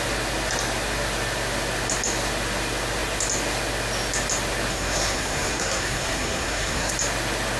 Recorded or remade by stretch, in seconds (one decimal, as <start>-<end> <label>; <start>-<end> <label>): 0.0-4.7 recorded; 4.7-6.9 remade; 6.9-7.6 recorded